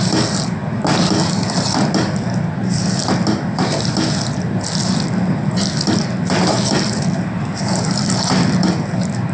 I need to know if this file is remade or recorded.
recorded